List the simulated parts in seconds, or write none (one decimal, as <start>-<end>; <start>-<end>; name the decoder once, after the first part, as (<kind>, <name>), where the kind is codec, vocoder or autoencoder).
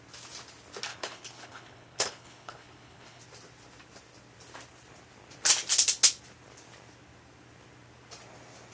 0.9-3.2 (codec, HILCodec)